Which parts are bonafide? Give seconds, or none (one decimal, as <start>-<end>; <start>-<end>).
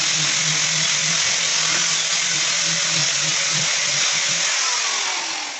0.0-3.0; 4.3-5.6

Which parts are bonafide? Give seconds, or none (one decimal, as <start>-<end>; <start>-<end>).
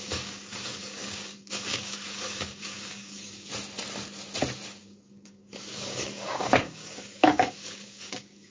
3.5-4.8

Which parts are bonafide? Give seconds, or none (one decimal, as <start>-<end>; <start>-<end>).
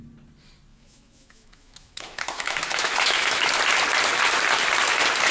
0.0-0.7; 3.5-5.3